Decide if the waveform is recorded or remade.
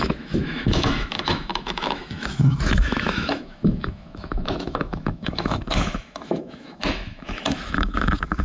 remade